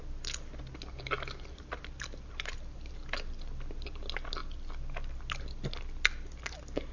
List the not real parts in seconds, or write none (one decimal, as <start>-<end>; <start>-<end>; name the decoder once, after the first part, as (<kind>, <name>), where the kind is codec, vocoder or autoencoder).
none